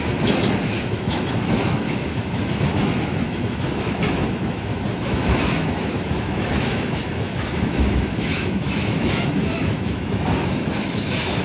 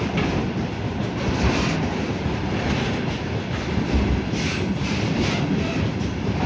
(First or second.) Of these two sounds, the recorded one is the second